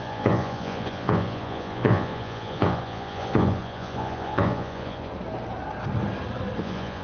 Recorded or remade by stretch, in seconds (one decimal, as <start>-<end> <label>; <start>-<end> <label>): 0.0-5.1 remade; 5.1-6.6 recorded; 6.6-7.0 remade